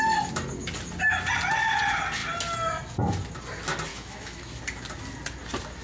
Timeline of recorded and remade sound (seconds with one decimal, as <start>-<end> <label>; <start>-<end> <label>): 0.0-3.9 recorded; 3.9-4.6 remade; 4.6-5.8 recorded